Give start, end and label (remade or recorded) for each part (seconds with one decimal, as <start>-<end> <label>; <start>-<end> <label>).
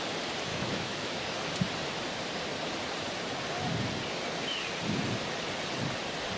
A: 0.0-0.5 recorded; 0.5-1.2 remade; 1.2-6.4 recorded